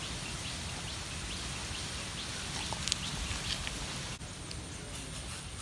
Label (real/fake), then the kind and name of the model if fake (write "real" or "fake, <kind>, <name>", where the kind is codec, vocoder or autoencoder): real